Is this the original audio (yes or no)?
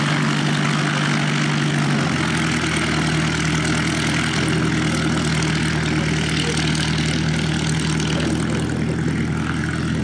yes